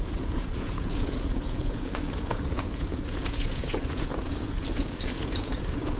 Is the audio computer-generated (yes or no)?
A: yes